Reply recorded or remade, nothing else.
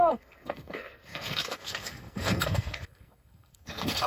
remade